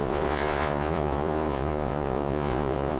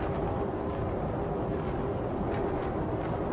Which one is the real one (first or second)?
second